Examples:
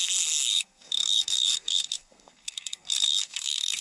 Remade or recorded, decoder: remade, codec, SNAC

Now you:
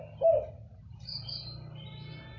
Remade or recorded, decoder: recorded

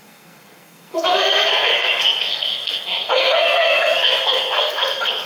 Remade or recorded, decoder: remade, codec, SNAC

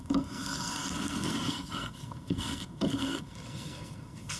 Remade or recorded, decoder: remade, codec, SNAC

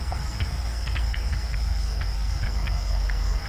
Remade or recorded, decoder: remade, codec, SNAC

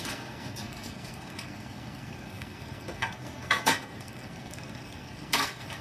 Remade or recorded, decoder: remade, codec, SNAC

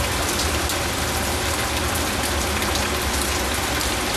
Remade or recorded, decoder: recorded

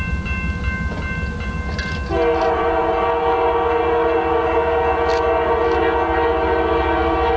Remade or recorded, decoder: recorded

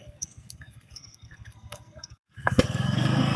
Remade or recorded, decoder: remade, codec, SNAC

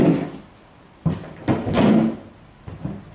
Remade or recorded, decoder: recorded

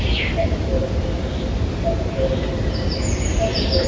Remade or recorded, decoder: recorded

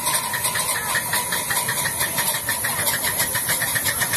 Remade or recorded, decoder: recorded